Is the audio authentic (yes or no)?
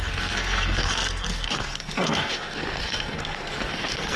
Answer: no